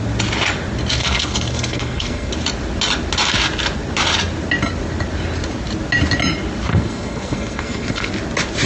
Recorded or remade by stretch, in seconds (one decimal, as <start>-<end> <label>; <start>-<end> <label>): 0.0-1.0 recorded; 1.0-2.3 remade; 2.3-6.7 recorded; 6.7-8.1 remade; 8.1-8.7 recorded